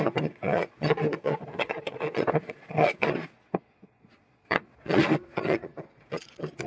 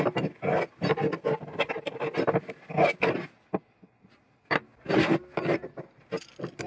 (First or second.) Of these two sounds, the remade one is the first